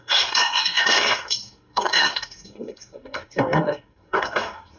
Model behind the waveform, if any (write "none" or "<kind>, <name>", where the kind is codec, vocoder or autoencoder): codec, SNAC